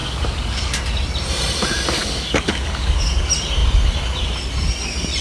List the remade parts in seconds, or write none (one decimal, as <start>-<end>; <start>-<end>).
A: 0.0-0.8; 2.0-3.0